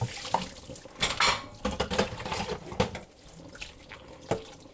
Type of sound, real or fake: real